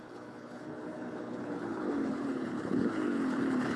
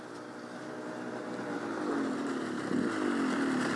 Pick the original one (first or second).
second